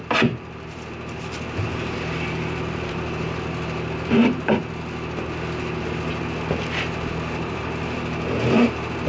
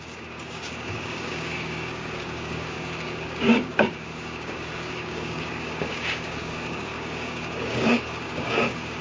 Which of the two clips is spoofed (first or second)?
second